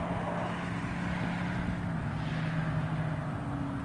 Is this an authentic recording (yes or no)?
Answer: yes